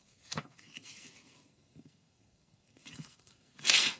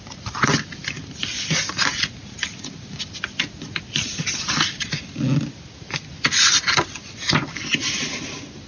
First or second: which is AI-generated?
first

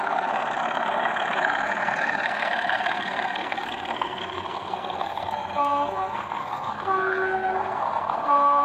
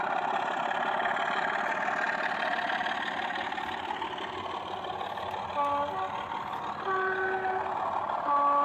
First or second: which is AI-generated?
first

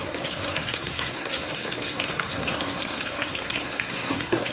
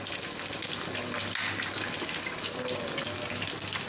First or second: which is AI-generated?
first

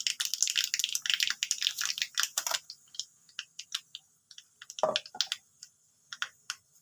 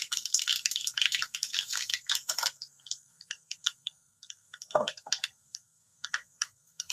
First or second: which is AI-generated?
second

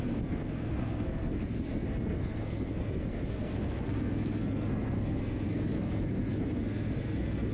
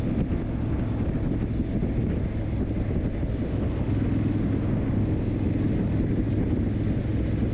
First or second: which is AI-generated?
first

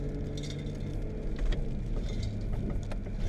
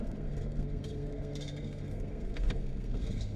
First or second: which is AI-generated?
second